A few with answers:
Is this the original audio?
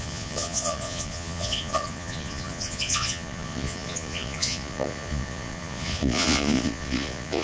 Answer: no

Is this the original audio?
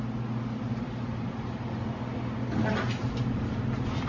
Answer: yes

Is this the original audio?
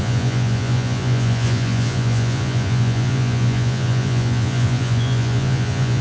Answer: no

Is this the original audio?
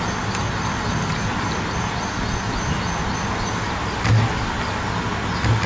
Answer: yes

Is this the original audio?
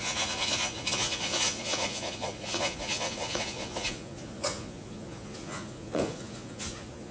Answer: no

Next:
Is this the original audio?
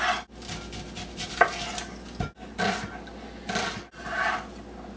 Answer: yes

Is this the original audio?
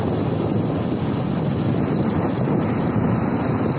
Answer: yes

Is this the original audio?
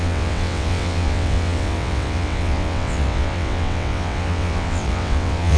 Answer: no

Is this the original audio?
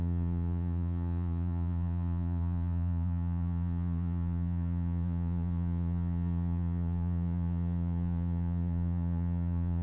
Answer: no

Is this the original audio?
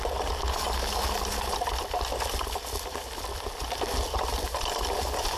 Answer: yes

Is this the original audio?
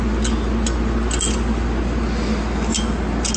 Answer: yes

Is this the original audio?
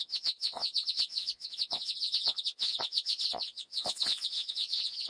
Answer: no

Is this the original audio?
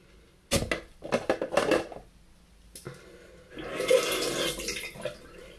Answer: yes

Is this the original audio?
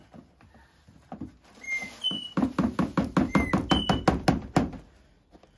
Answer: yes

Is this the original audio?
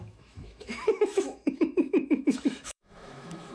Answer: no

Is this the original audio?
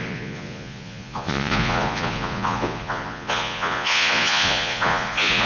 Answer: no